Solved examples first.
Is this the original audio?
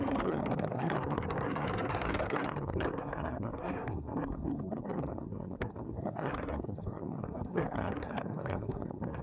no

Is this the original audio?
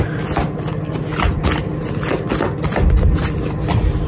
yes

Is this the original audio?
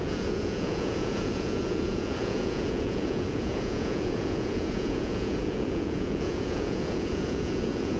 no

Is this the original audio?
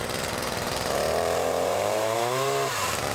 no